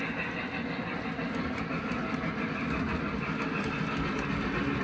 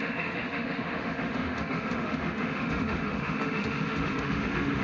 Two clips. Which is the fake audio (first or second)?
second